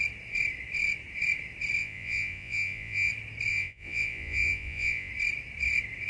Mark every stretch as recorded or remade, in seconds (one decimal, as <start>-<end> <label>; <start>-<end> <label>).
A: 0.0-1.8 recorded; 1.8-3.1 remade; 3.1-3.5 recorded; 3.5-5.1 remade; 5.1-6.1 recorded

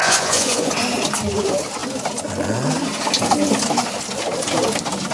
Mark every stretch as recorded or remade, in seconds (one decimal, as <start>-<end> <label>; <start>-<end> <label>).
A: 0.0-0.7 remade; 0.7-5.1 recorded

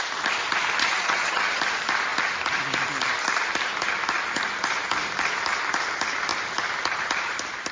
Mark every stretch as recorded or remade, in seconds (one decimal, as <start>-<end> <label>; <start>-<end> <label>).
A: 0.0-0.8 recorded; 0.8-1.6 remade; 1.6-7.7 recorded

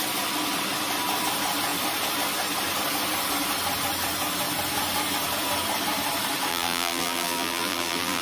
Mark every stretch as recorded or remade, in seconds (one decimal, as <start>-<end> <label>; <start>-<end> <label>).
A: 0.0-6.5 recorded; 6.5-8.2 remade

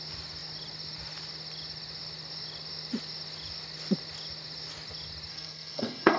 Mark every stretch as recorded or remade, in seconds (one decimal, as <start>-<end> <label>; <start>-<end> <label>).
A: 0.0-5.3 recorded; 5.3-6.2 remade

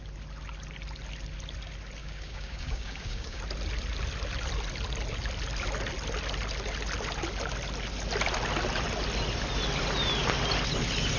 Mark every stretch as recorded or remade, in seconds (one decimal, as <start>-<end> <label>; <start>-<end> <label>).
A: 0.0-2.0 recorded; 2.0-3.4 remade; 3.4-11.2 recorded

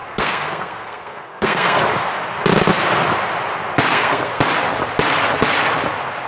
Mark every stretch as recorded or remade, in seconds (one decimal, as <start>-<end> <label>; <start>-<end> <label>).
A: 0.0-1.8 remade; 1.8-3.9 recorded; 3.9-4.4 remade; 4.4-6.3 recorded